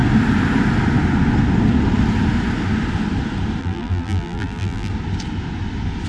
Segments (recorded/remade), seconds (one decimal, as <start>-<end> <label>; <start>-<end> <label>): 0.0-3.6 recorded; 3.6-4.9 remade; 4.9-6.1 recorded